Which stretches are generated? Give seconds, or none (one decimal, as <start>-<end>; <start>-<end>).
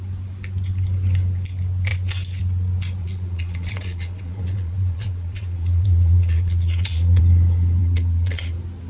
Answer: 3.0-7.2; 7.8-8.5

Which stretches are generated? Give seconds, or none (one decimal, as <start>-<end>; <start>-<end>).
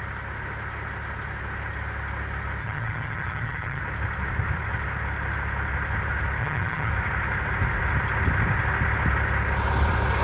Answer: 2.6-3.8; 6.4-6.9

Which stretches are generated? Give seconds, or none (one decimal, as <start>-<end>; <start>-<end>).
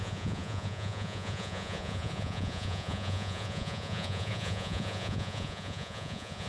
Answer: 0.0-6.5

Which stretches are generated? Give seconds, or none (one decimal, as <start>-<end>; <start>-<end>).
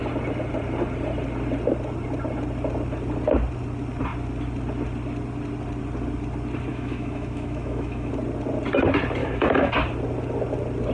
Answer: 6.7-8.1; 9.2-9.7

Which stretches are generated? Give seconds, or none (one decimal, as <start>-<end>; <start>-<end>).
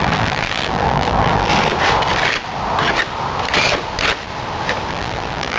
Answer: 0.0-1.5; 4.9-5.6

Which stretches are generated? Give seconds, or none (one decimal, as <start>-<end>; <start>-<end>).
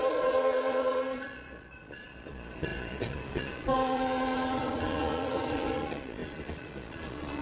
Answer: 0.0-7.4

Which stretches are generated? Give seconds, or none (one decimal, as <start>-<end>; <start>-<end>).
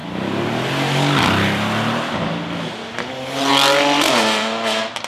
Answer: none